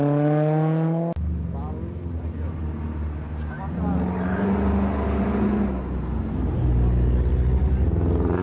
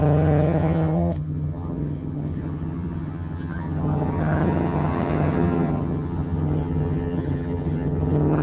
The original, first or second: first